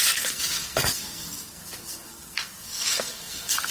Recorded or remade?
remade